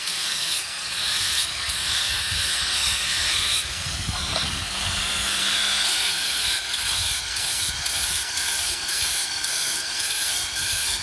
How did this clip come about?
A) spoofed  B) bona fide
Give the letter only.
A